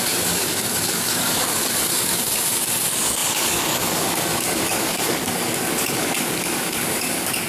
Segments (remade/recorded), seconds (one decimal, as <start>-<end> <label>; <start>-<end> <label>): 0.0-7.5 remade